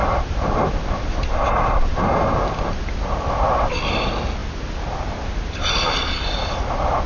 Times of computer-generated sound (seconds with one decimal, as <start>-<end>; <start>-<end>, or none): none